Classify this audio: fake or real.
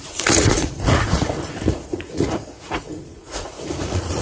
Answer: fake